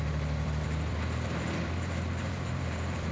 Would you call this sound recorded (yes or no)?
no